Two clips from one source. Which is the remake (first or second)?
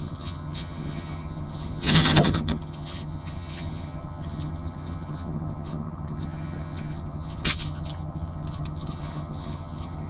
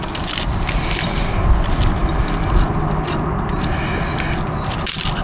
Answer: first